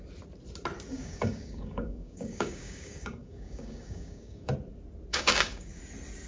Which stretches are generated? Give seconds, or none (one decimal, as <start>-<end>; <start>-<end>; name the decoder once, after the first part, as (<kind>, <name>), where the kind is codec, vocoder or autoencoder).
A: 0.9-4.5 (codec, DAC); 5.1-5.8